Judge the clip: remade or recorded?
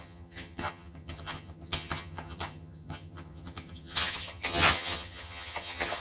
remade